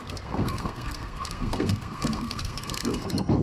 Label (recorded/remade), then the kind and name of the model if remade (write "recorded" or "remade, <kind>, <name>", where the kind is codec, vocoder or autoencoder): remade, codec, SNAC